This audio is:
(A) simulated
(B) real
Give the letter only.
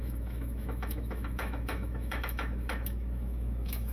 A